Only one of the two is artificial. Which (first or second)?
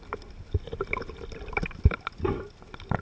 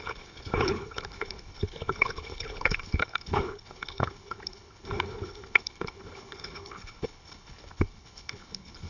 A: second